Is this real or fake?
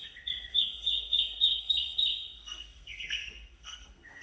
fake